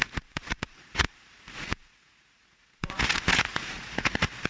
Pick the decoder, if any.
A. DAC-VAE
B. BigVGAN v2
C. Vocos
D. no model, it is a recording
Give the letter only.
C